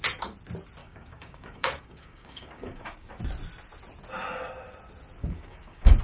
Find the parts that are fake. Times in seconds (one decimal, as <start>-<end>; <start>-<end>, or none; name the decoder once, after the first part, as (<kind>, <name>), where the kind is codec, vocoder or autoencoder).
0.8-3.2 (codec, DAC); 5.2-6.0

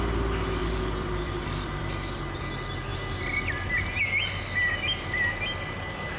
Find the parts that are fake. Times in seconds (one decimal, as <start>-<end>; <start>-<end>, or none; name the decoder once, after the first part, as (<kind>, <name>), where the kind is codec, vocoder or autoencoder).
0.6-2.4 (vocoder, BigVGAN v2)